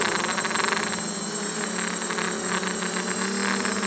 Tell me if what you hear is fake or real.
fake